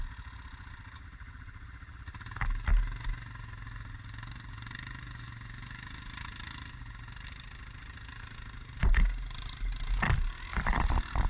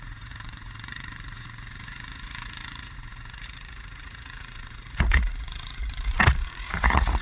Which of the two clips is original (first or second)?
first